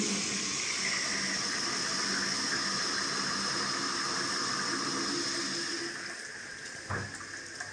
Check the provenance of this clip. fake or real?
real